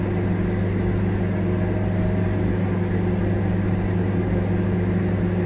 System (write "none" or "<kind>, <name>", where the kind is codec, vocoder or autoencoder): none